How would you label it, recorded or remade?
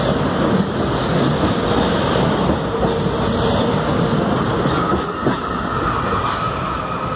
recorded